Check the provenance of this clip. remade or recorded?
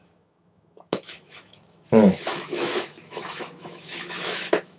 remade